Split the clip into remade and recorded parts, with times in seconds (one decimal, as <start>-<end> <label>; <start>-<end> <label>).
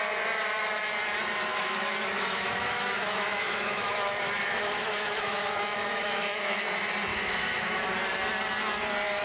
0.0-1.5 recorded; 1.5-6.6 remade; 6.6-7.1 recorded; 7.1-7.8 remade; 7.8-9.2 recorded